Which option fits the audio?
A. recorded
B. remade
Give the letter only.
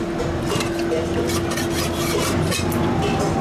A